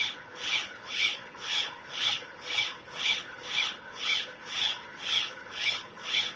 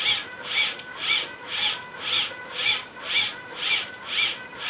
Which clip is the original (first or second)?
second